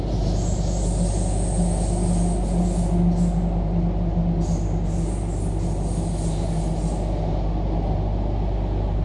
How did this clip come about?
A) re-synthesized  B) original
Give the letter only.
B